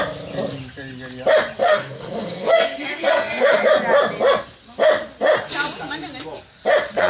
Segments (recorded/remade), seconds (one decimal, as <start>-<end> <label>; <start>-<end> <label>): 0.0-1.6 recorded; 1.6-3.7 remade; 3.7-7.1 recorded